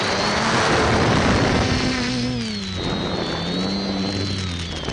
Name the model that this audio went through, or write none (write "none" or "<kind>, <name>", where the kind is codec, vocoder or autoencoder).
none